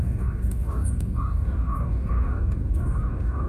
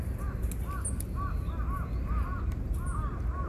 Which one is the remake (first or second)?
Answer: first